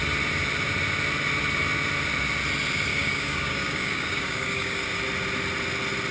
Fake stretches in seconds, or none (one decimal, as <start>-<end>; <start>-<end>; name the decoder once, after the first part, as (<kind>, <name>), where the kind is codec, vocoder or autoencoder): 2.9-5.0 (codec, DAC)